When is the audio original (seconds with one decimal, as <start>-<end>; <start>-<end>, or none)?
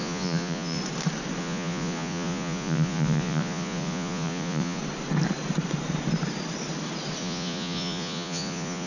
0.8-1.4; 4.8-7.2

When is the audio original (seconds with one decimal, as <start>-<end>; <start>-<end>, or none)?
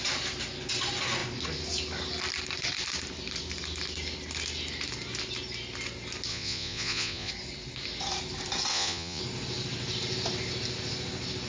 0.0-6.3; 7.3-8.7; 9.2-11.5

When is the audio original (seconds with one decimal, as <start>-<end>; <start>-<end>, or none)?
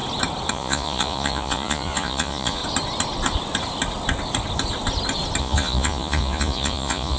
0.0-0.5; 2.6-5.4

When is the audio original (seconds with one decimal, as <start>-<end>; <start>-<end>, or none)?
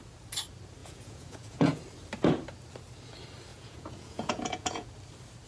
0.0-0.8; 1.8-3.5; 4.9-5.5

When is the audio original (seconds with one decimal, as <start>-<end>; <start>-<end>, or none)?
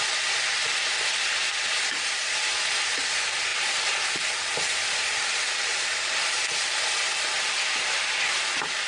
0.0-8.9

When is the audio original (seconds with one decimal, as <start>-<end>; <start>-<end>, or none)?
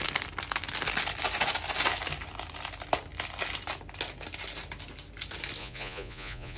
0.0-5.6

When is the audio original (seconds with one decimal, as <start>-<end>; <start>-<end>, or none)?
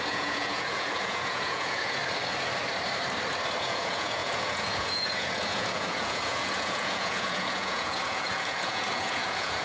2.0-3.6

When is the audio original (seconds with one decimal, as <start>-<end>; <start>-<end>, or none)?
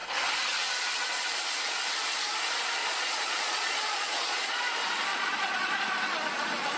0.0-2.8; 4.5-5.1; 5.8-6.8